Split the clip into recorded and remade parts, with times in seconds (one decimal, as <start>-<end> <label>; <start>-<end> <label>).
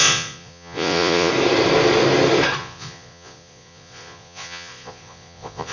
0.0-1.3 remade; 1.3-2.6 recorded; 2.6-5.7 remade